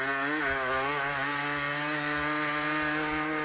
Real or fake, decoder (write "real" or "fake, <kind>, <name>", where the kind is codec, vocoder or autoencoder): real